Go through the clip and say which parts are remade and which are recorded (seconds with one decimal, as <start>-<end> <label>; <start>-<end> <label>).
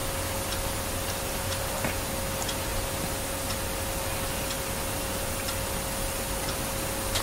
0.0-7.2 recorded